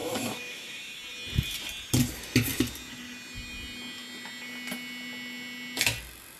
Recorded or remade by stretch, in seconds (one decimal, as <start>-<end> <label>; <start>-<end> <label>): 0.0-1.0 remade; 1.0-6.4 recorded